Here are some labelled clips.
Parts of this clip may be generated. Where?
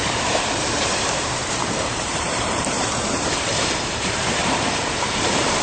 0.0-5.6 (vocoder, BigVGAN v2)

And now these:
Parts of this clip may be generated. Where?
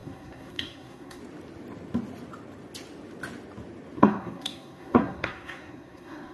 0.0-1.2 (codec, SNAC); 4.0-6.3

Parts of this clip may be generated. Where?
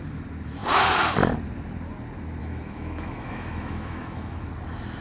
2.4-4.5 (autoencoder, DAC-VAE)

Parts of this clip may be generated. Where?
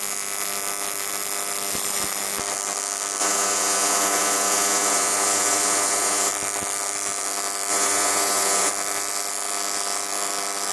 3.2-6.3 (vocoder, Vocos); 7.7-8.7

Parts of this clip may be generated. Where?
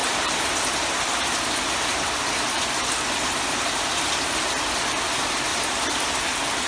5.5-6.2 (vocoder, BigVGAN v2)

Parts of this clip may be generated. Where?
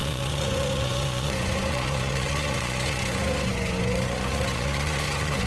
0.0-5.5 (vocoder, Vocos)